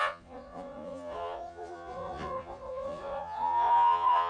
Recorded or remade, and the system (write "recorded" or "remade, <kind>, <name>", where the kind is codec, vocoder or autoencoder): remade, vocoder, Vocos